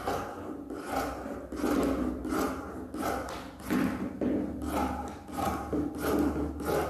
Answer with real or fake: real